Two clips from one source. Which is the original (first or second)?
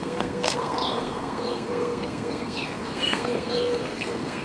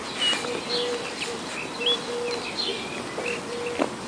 second